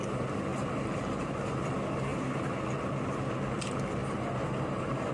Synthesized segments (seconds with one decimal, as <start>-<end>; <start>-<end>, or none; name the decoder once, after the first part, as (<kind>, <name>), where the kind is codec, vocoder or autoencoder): 0.5-1.6 (vocoder, BigVGAN v2); 4.0-5.1